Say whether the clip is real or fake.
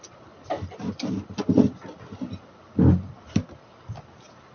real